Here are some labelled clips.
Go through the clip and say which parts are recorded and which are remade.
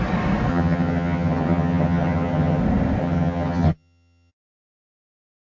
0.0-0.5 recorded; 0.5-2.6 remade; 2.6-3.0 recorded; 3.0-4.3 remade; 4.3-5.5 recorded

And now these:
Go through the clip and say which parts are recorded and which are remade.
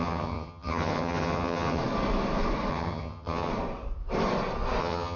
0.0-1.8 remade; 1.8-2.7 recorded; 2.7-3.5 remade; 3.5-4.8 recorded; 4.8-5.2 remade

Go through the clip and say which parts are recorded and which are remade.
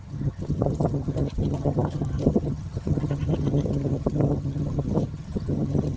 0.0-6.0 remade